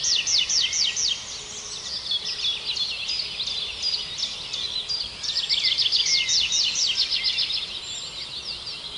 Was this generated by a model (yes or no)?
no